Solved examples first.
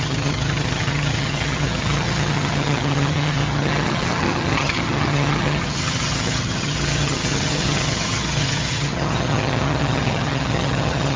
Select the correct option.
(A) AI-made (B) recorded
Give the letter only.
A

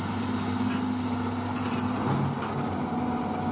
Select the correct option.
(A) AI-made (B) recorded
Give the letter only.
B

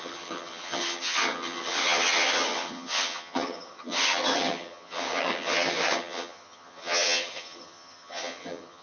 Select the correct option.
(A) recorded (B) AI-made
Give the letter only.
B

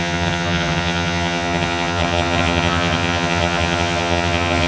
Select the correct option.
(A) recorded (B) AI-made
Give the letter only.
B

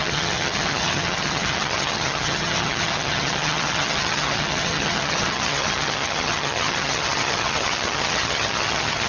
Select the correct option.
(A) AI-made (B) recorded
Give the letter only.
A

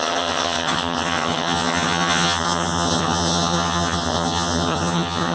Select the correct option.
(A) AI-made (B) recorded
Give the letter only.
A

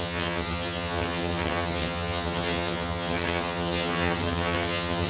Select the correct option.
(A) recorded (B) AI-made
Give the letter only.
B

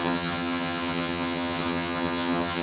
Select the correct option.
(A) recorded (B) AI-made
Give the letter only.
B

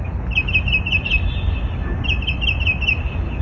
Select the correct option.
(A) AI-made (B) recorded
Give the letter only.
B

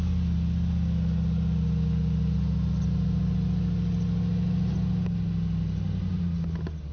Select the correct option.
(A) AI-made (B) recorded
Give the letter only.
B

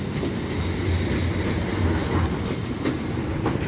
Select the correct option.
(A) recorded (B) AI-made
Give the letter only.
A